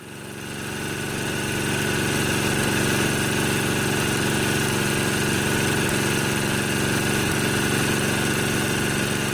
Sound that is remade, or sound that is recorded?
recorded